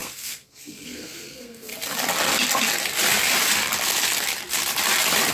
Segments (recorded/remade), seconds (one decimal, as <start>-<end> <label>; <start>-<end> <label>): 0.0-1.7 remade; 1.7-5.3 recorded